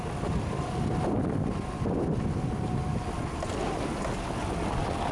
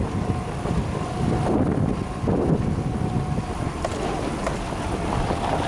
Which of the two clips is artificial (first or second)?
second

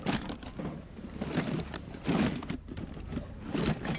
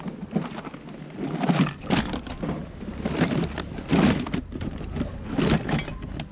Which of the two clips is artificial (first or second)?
first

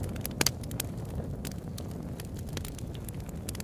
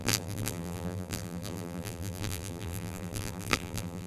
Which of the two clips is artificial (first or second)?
second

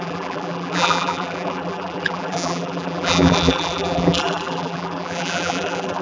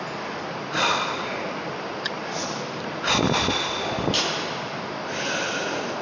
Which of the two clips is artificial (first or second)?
first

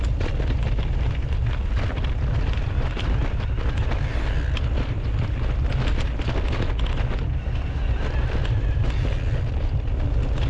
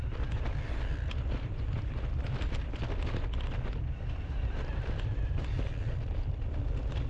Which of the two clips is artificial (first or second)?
second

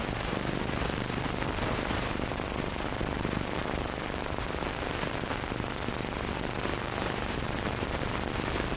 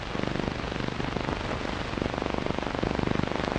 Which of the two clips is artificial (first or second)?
first